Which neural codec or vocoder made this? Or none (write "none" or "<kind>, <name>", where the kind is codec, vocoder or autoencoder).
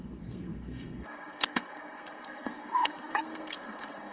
codec, SNAC